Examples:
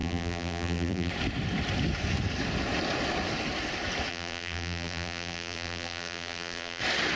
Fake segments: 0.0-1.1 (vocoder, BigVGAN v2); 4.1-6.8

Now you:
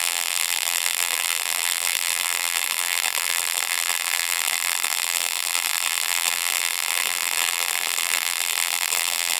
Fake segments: 0.0-9.4 (vocoder, BigVGAN v2)

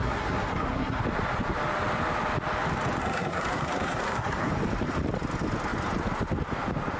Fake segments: 0.0-1.0 (codec, SNAC); 3.0-4.5